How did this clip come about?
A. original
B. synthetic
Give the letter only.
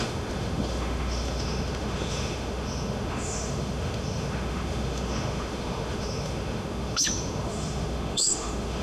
B